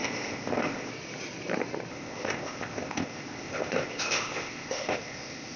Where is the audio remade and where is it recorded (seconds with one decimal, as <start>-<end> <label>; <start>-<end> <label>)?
0.0-0.9 remade; 0.9-1.9 recorded; 1.9-5.6 remade